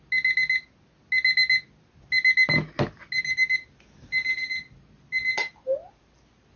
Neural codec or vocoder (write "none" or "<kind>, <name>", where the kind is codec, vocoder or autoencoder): none